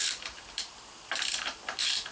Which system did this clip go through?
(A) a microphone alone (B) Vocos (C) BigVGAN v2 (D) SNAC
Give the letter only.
C